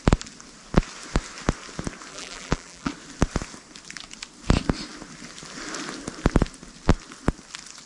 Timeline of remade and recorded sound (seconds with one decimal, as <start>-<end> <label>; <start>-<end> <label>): 0.0-2.1 recorded; 2.1-2.9 remade; 2.9-7.9 recorded